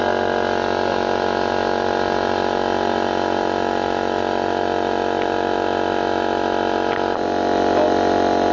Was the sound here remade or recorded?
recorded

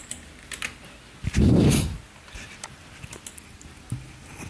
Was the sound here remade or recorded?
recorded